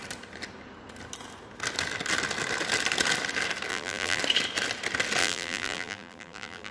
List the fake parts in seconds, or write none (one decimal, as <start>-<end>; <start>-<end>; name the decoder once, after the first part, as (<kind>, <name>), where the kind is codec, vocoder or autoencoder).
3.7-4.2 (vocoder, BigVGAN v2); 5.2-6.7